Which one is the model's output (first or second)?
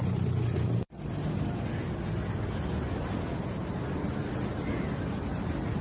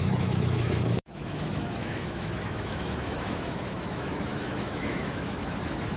second